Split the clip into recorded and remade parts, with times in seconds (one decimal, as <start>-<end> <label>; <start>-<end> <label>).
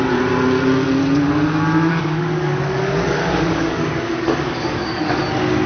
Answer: 0.0-1.9 recorded; 1.9-5.2 remade; 5.2-5.7 recorded